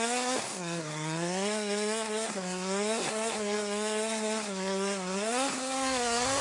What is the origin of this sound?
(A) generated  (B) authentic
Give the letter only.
A